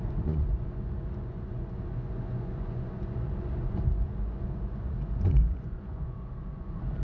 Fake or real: fake